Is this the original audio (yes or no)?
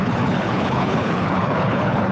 no